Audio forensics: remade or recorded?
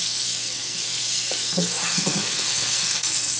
remade